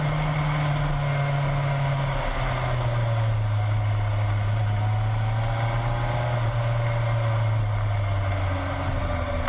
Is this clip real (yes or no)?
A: yes